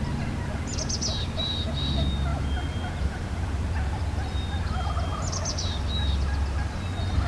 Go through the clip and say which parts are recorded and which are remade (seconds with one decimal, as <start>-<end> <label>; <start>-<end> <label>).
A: 0.0-7.3 recorded